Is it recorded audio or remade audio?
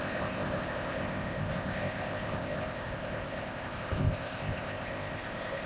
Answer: remade